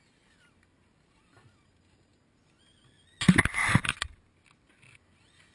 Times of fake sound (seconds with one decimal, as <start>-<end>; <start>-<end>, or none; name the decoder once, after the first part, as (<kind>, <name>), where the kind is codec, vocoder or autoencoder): none